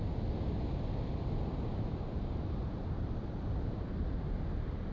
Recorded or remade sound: recorded